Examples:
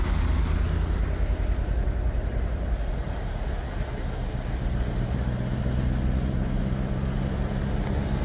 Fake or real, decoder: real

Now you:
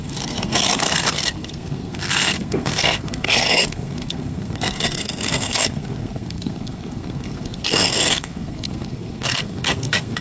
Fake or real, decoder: fake, codec, SNAC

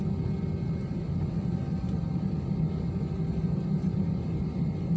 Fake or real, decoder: real